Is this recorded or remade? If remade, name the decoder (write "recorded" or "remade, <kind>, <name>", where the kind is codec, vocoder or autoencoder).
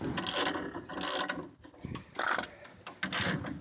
recorded